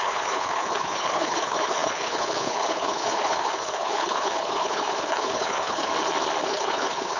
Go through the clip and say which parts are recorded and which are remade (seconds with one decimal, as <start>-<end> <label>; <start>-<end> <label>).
0.0-5.9 remade; 5.9-6.4 recorded; 6.4-7.2 remade